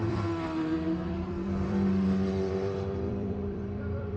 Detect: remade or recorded remade